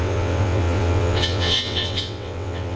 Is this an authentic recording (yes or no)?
no